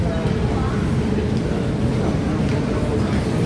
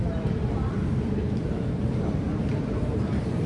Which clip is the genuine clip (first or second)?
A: first